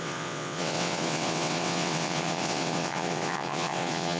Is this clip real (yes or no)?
no